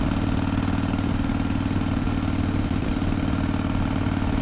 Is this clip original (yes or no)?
yes